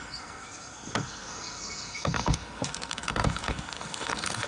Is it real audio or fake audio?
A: fake